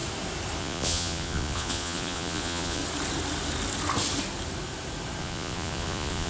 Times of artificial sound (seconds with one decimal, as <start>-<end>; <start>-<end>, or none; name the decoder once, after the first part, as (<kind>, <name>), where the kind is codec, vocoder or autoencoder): 0.6-2.8 (vocoder, Vocos); 5.2-6.3